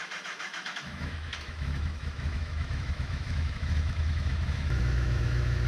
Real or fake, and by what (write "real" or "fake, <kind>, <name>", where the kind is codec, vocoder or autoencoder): fake, autoencoder, DAC-VAE